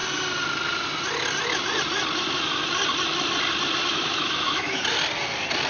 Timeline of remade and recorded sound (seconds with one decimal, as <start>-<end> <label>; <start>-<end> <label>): 0.0-3.9 recorded; 3.9-4.8 remade; 4.8-5.7 recorded